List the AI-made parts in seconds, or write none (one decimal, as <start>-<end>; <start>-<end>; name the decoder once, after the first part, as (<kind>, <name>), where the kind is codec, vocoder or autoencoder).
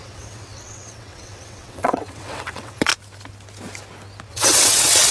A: 0.0-2.9 (vocoder, WaveNeXt); 4.3-5.1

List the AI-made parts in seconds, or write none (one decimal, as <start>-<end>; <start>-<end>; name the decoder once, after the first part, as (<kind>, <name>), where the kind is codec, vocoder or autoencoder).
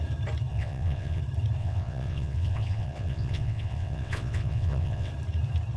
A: 0.5-1.2 (vocoder, WaveNeXt); 1.6-5.1